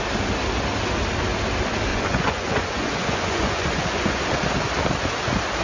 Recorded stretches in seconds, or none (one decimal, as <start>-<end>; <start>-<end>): 0.0-1.9; 4.2-5.6